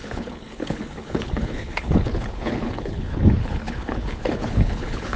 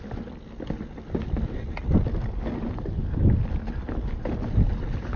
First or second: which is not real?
first